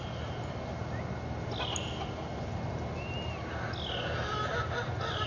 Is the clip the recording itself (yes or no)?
yes